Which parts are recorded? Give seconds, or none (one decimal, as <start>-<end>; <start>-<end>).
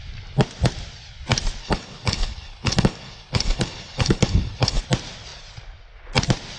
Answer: 0.0-1.6; 4.8-6.6